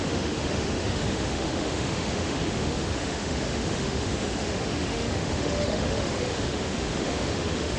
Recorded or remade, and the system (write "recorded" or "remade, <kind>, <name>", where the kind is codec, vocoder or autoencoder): remade, autoencoder, DAC-VAE